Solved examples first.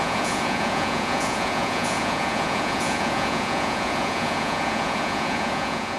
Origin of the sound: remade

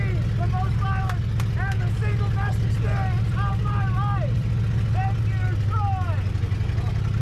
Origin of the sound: recorded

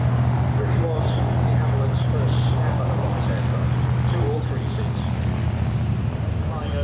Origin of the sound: recorded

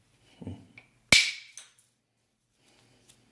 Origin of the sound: recorded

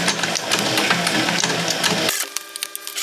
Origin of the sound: recorded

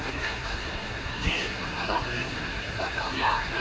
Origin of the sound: remade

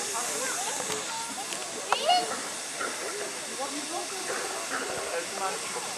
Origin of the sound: recorded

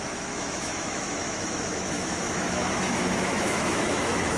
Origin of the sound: remade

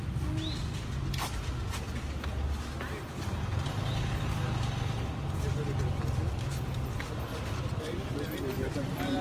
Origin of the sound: recorded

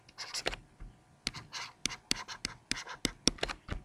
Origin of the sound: recorded